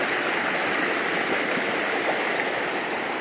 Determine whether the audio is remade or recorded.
recorded